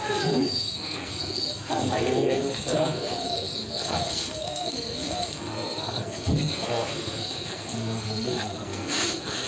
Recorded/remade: remade